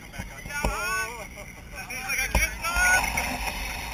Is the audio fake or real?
real